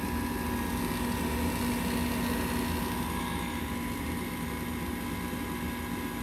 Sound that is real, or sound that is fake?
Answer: real